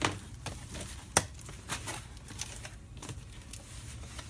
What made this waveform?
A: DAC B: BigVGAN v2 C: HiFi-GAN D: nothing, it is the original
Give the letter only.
D